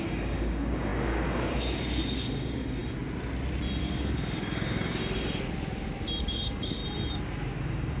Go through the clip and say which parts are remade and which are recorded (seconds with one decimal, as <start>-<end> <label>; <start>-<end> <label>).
0.0-2.8 remade; 2.8-3.8 recorded; 3.8-5.0 remade; 5.0-6.2 recorded; 6.2-6.8 remade; 6.8-7.6 recorded; 7.6-8.0 remade